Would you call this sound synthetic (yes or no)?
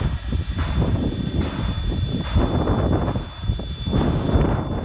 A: no